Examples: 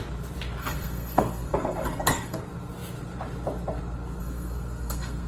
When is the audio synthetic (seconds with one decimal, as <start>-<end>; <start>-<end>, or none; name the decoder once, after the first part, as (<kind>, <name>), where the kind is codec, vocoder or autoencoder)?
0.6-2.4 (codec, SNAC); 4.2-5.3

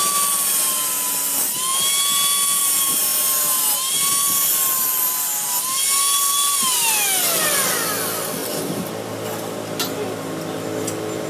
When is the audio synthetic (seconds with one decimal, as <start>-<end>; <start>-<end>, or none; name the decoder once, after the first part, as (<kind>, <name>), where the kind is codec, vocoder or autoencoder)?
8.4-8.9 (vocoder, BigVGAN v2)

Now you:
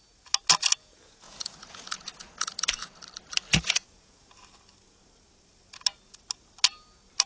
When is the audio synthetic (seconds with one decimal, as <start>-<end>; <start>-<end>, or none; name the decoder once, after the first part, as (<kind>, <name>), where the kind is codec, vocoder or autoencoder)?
0.8-3.0 (vocoder, Vocos); 3.5-4.3

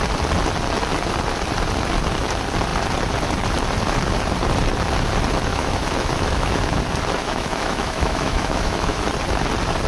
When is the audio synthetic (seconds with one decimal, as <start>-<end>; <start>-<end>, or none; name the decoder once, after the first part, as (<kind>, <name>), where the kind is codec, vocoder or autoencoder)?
5.5-6.8 (autoencoder, DAC-VAE); 7.2-9.1

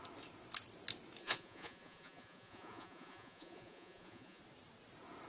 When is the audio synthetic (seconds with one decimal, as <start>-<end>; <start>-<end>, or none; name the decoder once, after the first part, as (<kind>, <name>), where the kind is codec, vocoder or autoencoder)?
1.2-4.4 (vocoder, Vocos)

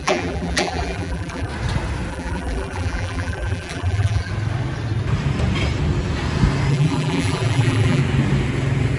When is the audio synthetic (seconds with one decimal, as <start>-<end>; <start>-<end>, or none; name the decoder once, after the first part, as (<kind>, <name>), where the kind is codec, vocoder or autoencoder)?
0.0-1.5 (vocoder, BigVGAN v2); 2.1-4.3; 6.7-8.0

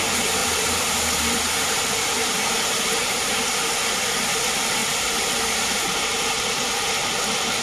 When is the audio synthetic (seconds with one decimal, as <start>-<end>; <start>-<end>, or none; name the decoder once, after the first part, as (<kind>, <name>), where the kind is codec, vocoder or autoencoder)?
0.4-3.9 (vocoder, BigVGAN v2); 4.8-6.4

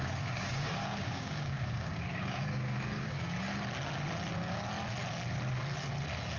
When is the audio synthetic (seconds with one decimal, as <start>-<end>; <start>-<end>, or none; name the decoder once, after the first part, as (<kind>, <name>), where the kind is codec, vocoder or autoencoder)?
0.0-3.5 (codec, DAC)